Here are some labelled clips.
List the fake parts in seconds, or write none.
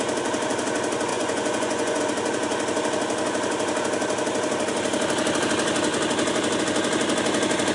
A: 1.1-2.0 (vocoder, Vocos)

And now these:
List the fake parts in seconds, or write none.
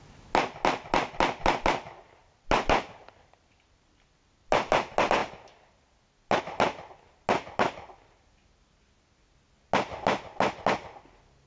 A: none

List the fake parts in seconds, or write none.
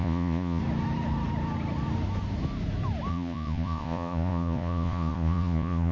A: 0.0-0.6 (vocoder, Vocos); 3.1-5.9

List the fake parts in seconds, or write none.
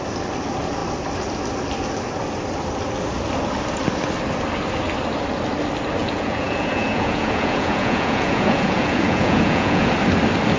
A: 6.0-9.9 (vocoder, Vocos)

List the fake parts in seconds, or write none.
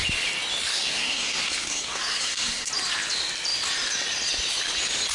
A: 0.7-2.7 (codec, SNAC)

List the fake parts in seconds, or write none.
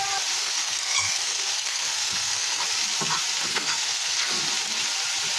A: 0.4-2.6 (codec, SNAC); 3.5-4.3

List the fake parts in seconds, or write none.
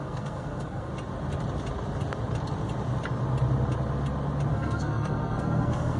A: 0.0-0.9 (codec, SNAC); 4.5-6.0